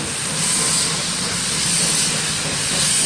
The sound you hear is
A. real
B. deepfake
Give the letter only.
A